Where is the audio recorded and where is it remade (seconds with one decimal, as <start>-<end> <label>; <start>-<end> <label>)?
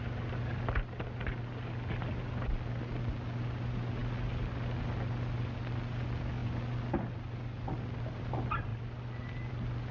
0.0-9.9 recorded